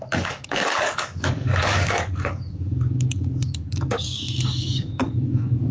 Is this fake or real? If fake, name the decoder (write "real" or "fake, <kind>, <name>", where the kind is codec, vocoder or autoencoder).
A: fake, codec, DAC